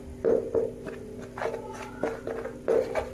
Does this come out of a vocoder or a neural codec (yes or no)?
no